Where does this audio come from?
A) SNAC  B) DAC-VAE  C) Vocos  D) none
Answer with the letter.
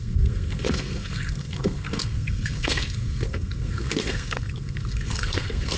A